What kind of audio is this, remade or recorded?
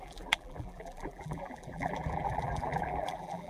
remade